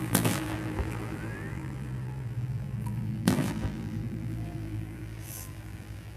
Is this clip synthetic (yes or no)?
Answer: yes